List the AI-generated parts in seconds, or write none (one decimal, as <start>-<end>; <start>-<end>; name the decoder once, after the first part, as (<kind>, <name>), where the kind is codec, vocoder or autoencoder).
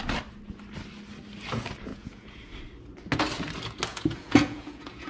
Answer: 1.9-2.4 (vocoder, Vocos); 3.9-5.1